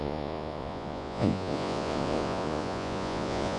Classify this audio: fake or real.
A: fake